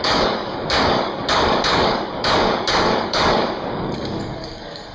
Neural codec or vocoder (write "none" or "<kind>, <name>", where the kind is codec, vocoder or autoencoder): codec, DAC